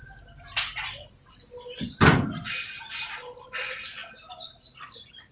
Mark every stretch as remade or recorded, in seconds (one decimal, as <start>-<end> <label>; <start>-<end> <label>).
0.0-5.3 recorded